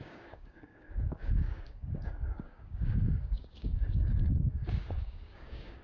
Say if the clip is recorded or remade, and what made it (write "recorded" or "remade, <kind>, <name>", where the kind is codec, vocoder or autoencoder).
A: remade, codec, DAC